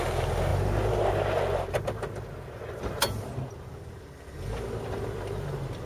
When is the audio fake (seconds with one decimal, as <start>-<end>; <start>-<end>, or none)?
none